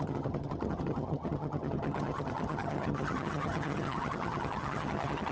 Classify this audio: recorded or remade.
remade